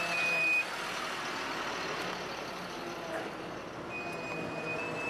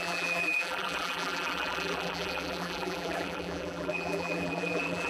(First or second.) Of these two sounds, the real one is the first